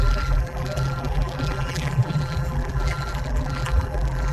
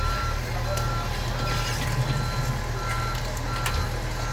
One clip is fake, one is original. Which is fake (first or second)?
first